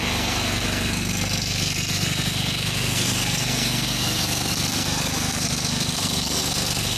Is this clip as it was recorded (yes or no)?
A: no